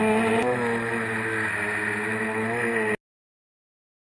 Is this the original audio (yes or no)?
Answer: yes